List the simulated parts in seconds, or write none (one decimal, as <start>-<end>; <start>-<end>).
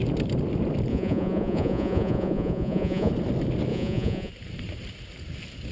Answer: 0.9-3.1; 3.7-4.3